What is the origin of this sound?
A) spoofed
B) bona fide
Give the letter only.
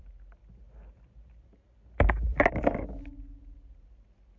B